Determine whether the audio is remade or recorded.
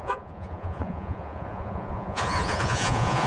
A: remade